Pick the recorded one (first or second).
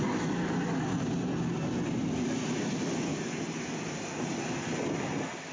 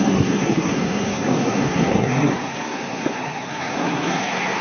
first